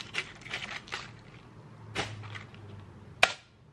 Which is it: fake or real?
real